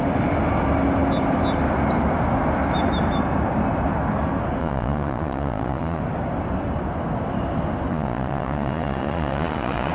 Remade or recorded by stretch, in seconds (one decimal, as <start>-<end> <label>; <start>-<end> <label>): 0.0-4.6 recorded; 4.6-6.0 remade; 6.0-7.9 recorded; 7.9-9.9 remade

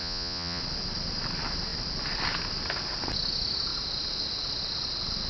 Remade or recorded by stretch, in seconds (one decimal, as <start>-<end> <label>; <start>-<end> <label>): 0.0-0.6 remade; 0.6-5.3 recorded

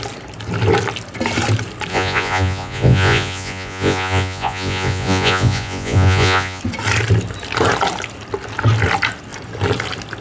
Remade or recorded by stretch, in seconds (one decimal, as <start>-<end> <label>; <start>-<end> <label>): 0.0-1.9 recorded; 1.9-6.6 remade; 6.6-10.2 recorded

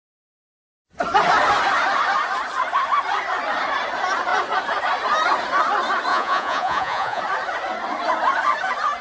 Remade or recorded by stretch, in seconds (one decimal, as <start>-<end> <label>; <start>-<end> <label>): 0.0-6.1 recorded; 6.1-7.2 remade; 7.2-9.0 recorded